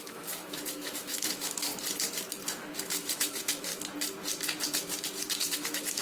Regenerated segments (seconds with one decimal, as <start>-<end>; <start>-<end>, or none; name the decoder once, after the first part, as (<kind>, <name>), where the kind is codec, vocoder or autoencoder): 0.0-1.7 (autoencoder, DAC-VAE); 2.8-3.7; 5.4-6.0